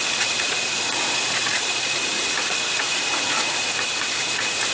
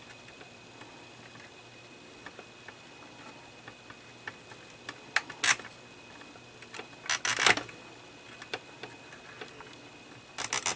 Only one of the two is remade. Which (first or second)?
first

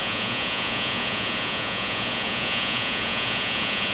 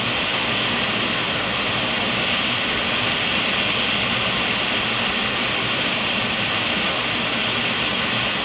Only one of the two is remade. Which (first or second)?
first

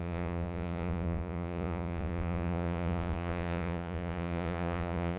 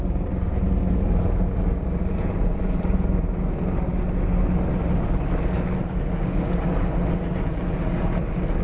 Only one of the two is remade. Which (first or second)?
first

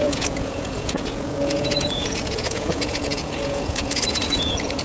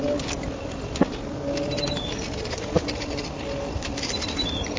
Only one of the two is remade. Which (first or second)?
first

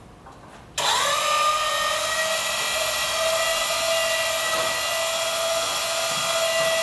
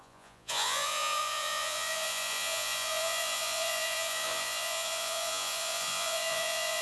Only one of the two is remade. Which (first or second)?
second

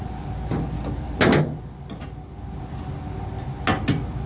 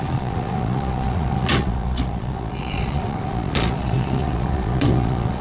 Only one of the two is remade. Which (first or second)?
second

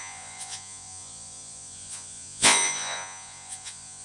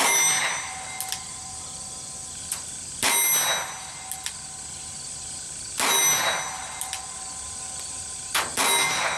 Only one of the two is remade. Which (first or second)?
first